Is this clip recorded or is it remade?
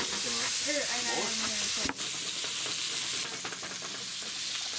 recorded